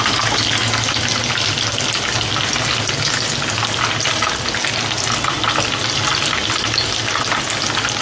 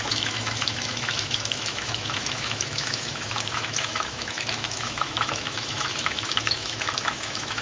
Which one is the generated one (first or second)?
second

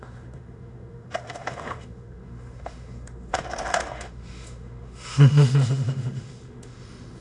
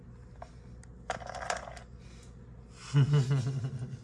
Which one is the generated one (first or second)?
first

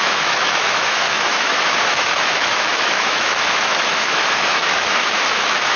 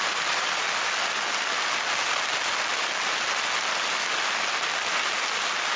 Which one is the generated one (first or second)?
first